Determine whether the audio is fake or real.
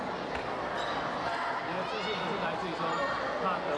real